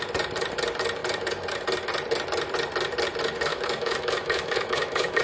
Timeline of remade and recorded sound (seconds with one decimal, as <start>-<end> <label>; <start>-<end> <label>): 0.0-3.5 recorded; 3.5-5.2 remade